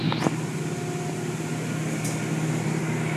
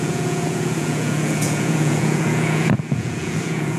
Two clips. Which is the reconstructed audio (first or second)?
second